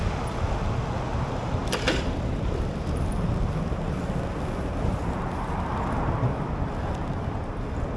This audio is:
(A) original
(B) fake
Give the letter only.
A